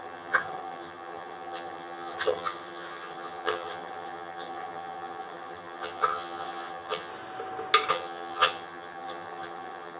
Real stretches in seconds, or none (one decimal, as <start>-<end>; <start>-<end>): 7.1-7.9